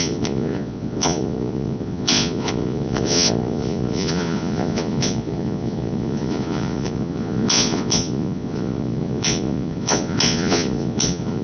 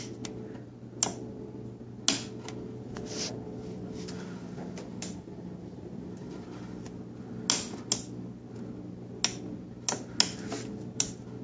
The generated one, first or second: first